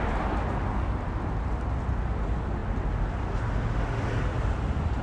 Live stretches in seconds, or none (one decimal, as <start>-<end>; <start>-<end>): 0.0-5.0